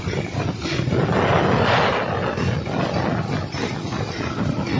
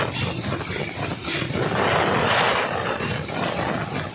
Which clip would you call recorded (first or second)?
first